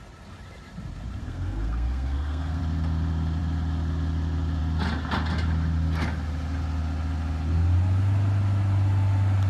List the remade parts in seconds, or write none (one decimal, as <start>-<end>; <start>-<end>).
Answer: 1.2-2.6